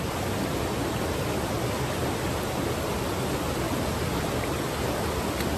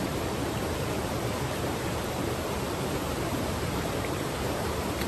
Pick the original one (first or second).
first